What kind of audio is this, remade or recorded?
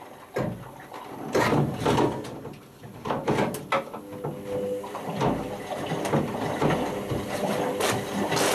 recorded